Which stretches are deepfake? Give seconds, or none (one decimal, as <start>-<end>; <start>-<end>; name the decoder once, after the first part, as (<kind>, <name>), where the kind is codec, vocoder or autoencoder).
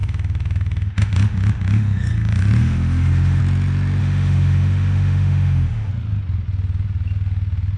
0.0-3.4 (autoencoder, DAC-VAE); 4.0-5.9